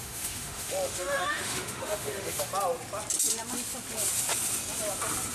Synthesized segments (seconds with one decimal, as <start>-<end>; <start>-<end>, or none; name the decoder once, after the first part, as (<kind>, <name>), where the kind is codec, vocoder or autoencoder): 0.0-2.5 (autoencoder, DAC-VAE)